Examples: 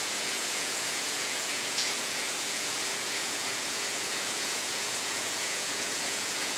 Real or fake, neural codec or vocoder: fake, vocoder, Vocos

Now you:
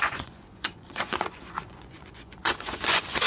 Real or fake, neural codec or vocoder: fake, vocoder, Vocos